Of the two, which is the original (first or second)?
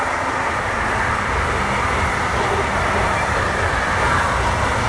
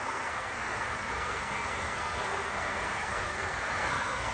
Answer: first